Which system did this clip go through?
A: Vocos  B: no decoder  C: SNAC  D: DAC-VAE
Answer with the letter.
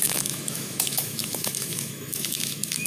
D